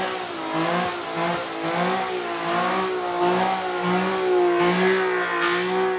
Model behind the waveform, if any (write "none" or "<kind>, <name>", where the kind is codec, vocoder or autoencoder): none